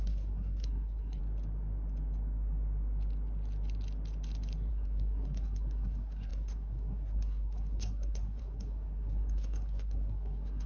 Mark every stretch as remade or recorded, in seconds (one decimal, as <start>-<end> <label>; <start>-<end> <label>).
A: 0.0-1.2 remade; 1.2-4.7 recorded; 4.7-10.7 remade